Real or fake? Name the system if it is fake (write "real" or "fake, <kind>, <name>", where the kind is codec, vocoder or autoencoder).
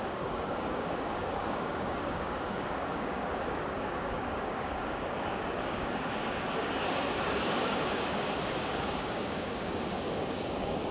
fake, codec, DAC